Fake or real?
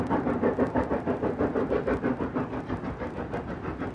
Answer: real